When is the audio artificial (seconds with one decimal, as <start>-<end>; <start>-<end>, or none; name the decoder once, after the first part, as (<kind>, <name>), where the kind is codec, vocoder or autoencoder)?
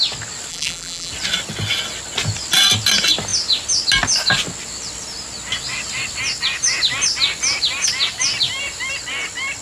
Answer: 0.5-1.1 (vocoder, BigVGAN v2)